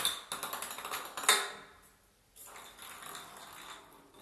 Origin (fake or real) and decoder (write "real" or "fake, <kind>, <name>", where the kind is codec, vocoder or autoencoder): real